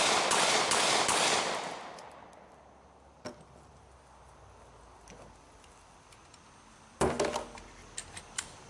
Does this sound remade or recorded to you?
recorded